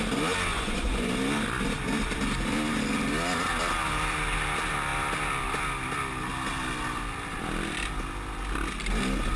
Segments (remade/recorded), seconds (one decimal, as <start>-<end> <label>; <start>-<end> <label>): 0.0-0.5 recorded; 0.5-1.1 remade; 1.1-9.4 recorded

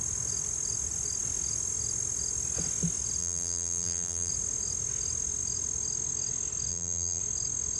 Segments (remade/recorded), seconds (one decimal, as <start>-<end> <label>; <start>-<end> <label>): 0.0-3.2 recorded; 3.2-4.3 remade; 4.3-6.7 recorded; 6.7-7.2 remade; 7.2-7.8 recorded

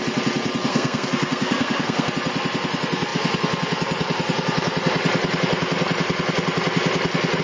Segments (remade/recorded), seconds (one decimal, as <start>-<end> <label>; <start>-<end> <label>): 0.0-0.7 recorded; 0.7-2.1 remade; 2.1-7.4 recorded

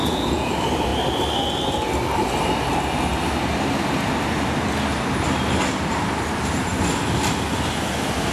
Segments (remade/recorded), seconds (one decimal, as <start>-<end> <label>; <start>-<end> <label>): 0.0-0.5 remade; 0.5-8.3 recorded

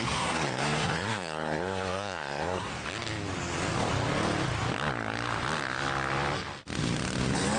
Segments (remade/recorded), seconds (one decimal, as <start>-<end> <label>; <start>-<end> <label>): 0.0-2.7 remade; 2.7-7.6 recorded